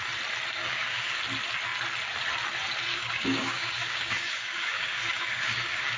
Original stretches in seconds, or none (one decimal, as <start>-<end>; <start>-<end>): 0.0-0.6; 1.2-2.9